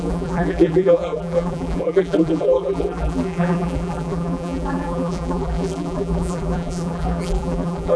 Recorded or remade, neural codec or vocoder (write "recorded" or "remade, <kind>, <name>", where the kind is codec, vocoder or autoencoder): remade, vocoder, BigVGAN v2